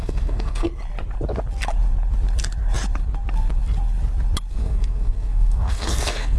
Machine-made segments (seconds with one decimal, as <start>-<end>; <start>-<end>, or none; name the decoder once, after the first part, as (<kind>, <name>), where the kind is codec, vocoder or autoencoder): 0.0-0.7 (codec, SNAC); 4.5-6.4